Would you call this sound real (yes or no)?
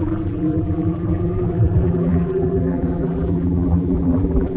no